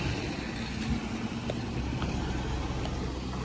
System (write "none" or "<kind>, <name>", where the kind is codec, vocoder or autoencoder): none